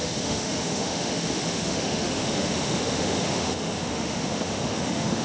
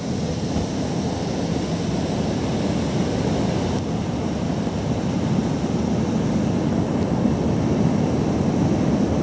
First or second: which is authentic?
second